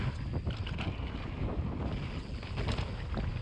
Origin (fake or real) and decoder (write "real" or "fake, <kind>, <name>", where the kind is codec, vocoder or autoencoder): real